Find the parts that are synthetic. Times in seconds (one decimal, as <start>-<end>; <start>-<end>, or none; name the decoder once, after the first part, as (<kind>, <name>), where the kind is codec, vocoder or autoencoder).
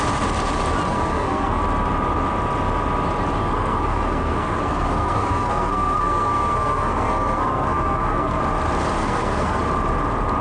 0.9-1.6 (codec, SNAC); 3.4-8.4; 9.0-9.6